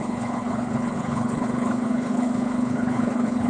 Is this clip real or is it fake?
fake